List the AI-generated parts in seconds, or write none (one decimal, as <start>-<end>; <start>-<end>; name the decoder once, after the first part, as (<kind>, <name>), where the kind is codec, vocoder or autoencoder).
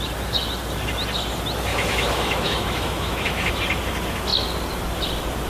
1.7-3.5 (autoencoder, DAC-VAE)